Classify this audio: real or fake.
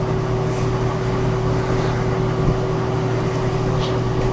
real